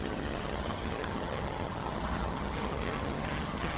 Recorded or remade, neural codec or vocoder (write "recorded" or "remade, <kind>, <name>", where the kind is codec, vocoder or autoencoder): remade, vocoder, HiFi-GAN